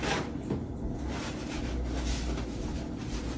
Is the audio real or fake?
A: real